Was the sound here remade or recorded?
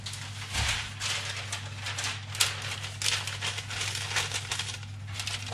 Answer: recorded